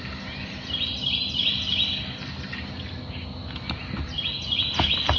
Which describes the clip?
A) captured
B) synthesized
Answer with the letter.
A